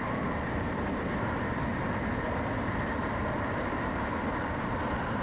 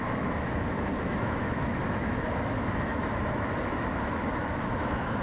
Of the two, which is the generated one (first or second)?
second